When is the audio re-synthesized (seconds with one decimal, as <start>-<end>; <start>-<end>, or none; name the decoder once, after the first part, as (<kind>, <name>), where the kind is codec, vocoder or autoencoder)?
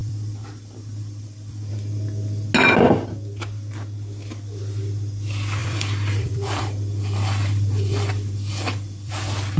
0.0-1.7 (vocoder, BigVGAN v2); 5.6-9.1